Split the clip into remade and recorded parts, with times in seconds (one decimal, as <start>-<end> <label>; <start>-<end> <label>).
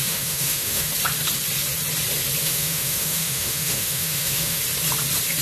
0.0-0.9 remade; 0.9-2.4 recorded; 2.4-4.6 remade; 4.6-5.4 recorded